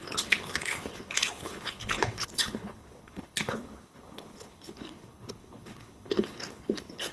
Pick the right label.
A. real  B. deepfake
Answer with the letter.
B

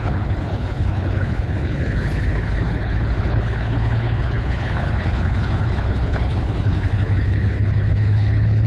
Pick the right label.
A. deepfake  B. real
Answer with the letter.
A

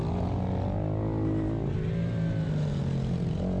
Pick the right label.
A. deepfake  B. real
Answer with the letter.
B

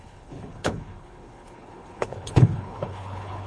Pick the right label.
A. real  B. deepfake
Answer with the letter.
B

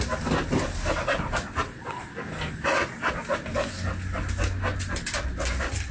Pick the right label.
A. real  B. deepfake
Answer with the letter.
A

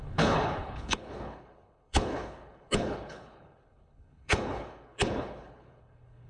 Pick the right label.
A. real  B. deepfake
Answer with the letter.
B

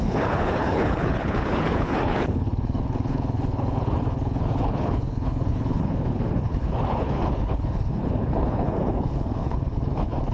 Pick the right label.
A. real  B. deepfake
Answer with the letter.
B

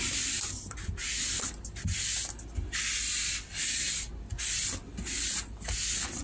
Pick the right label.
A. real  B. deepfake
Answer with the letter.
A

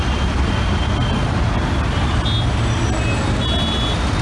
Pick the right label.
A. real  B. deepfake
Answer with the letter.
A